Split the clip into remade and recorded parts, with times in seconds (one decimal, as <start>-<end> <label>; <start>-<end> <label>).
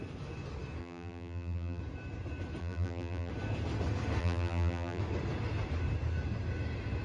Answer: 0.0-0.8 recorded; 0.8-1.8 remade; 1.8-2.6 recorded; 2.6-3.3 remade; 3.3-4.2 recorded; 4.2-5.0 remade; 5.0-7.0 recorded